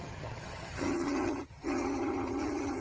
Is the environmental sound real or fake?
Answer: fake